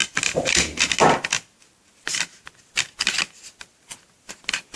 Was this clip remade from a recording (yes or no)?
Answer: no